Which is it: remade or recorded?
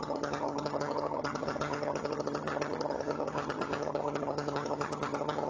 remade